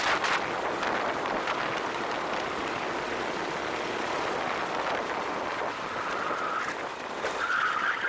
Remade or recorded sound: recorded